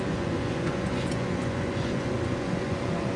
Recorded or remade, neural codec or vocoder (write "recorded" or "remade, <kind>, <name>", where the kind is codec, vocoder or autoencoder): remade, vocoder, Vocos